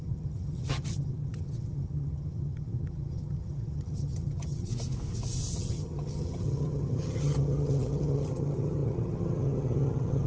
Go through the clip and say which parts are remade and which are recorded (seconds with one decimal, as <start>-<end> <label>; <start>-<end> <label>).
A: 0.0-4.7 remade; 4.7-5.5 recorded; 5.5-10.3 remade